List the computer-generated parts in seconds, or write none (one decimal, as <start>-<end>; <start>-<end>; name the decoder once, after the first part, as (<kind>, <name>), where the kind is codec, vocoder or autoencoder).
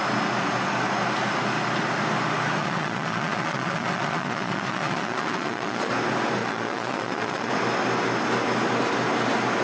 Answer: 2.6-5.9 (vocoder, Vocos); 6.4-7.5